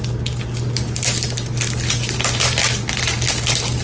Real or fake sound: real